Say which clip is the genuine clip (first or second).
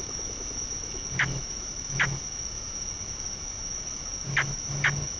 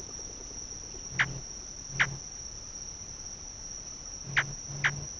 second